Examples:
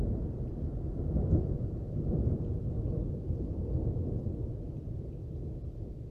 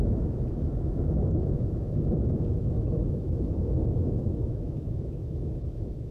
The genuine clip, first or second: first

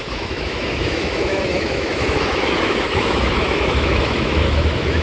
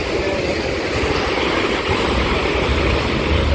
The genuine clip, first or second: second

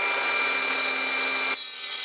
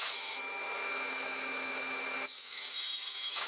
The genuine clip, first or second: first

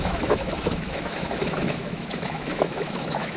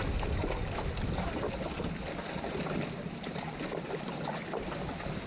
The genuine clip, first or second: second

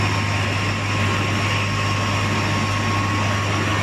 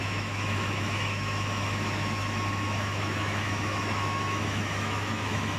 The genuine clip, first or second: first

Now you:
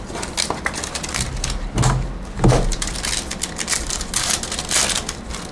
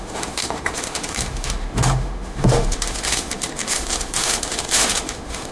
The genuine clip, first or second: first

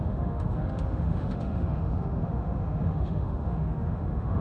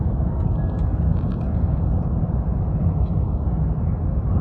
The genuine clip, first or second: second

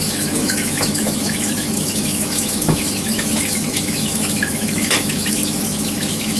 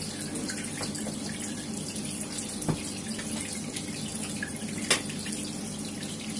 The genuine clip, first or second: second